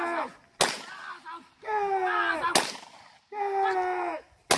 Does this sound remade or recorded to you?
recorded